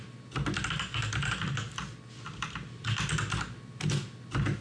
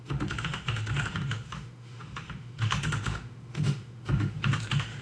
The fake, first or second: second